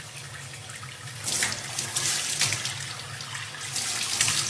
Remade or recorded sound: recorded